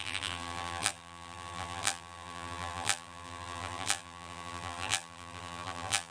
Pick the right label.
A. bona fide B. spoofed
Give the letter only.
B